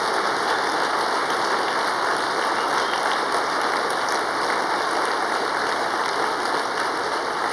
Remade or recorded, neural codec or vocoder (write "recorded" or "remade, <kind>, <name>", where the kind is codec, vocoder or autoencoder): recorded